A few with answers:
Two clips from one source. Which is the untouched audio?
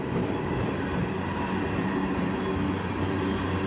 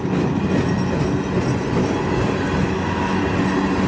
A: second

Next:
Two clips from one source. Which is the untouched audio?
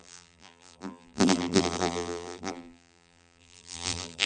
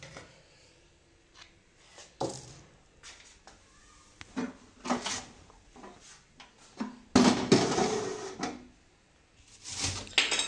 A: second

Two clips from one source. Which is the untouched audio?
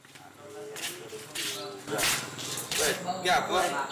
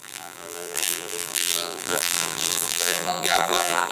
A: first